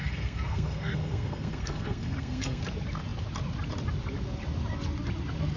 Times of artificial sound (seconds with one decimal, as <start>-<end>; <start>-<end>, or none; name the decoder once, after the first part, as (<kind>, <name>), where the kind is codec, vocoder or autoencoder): 0.0-2.6 (codec, SNAC)